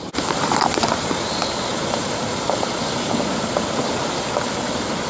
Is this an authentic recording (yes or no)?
yes